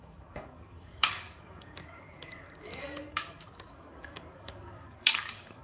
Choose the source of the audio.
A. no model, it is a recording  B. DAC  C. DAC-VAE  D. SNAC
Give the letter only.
B